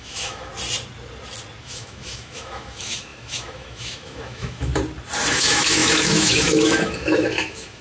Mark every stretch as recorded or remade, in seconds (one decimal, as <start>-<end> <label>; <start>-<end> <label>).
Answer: 0.0-0.5 remade; 0.5-1.6 recorded; 1.6-4.7 remade; 4.7-5.3 recorded; 5.3-7.8 remade